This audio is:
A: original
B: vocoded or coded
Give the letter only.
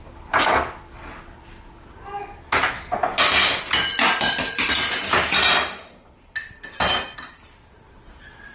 A